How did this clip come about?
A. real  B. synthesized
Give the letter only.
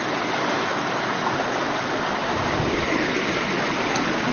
A